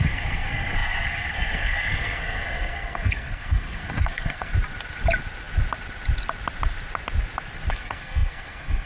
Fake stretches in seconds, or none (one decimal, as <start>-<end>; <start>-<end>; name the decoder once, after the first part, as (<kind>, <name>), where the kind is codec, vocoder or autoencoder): 0.0-4.5 (codec, SNAC); 7.7-8.9